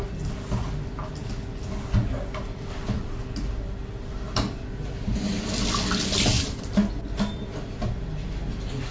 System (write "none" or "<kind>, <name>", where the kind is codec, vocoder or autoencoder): none